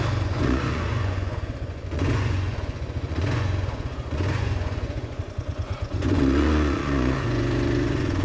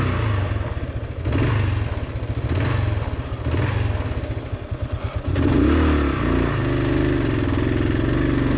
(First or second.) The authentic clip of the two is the second